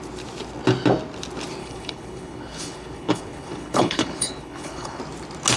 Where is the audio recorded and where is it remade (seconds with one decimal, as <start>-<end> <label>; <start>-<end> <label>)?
0.0-1.6 recorded; 1.6-5.0 remade; 5.0-5.6 recorded